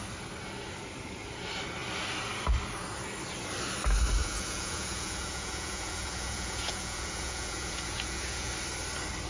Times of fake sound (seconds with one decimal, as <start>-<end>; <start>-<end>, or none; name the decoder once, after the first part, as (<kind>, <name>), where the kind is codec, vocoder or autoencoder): 4.2-8.5 (vocoder, Vocos)